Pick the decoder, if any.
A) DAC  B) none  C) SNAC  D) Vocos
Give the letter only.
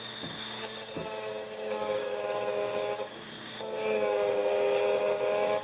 A